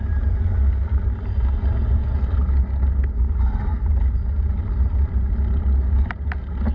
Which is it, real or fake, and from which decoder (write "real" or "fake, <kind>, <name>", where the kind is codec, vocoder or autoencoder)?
real